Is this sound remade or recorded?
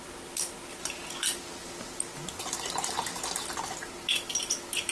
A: recorded